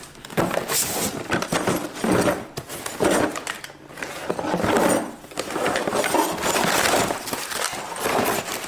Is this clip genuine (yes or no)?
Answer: yes